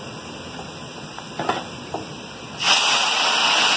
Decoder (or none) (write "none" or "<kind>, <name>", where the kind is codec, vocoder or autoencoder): none